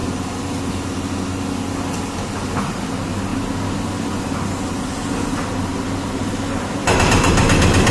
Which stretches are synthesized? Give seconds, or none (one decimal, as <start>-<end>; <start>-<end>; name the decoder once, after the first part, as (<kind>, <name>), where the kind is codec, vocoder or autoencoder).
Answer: 0.0-1.1 (vocoder, BigVGAN v2); 5.7-7.3